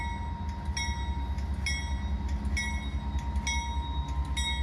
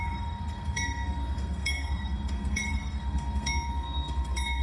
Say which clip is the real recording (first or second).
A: first